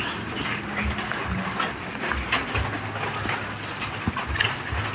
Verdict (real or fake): real